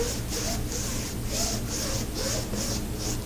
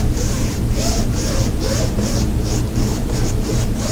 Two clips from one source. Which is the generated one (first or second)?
second